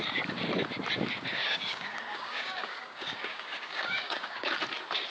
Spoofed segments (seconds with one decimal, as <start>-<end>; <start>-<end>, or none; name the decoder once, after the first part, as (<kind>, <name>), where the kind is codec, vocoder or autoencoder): 1.4-4.5 (codec, DAC)